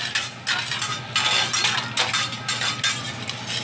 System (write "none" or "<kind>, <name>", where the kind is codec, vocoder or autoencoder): none